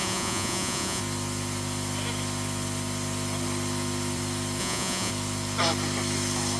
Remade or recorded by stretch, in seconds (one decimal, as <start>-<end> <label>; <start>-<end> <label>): 0.0-1.0 remade; 1.0-4.6 recorded; 4.6-5.1 remade; 5.1-6.6 recorded